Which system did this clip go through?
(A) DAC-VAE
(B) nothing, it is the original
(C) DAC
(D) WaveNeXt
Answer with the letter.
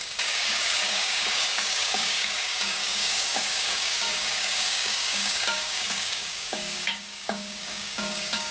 C